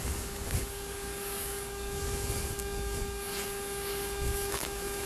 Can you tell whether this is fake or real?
fake